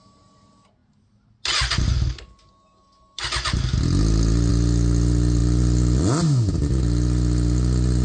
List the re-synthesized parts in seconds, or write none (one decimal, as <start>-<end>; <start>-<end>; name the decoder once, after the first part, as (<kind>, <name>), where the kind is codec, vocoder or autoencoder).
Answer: none